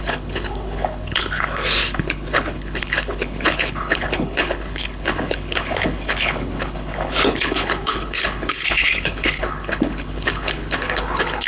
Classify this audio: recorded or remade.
remade